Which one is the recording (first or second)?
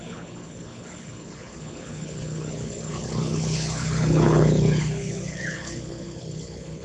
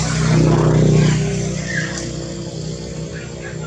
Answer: second